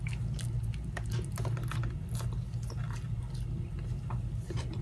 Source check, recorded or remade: recorded